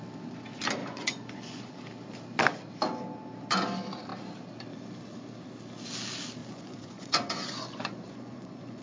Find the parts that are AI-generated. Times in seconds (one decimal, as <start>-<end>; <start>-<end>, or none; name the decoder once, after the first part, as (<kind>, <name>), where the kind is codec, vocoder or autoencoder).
0.8-1.8 (vocoder, Vocos); 6.4-8.8